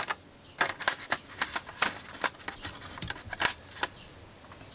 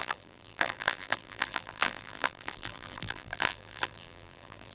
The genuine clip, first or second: first